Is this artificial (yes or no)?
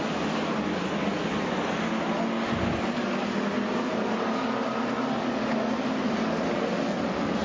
no